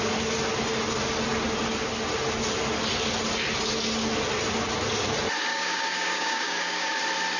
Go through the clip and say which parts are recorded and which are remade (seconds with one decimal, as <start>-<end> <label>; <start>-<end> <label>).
0.0-5.5 recorded; 5.5-7.0 remade; 7.0-7.4 recorded